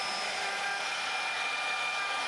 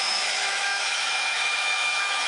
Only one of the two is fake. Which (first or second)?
second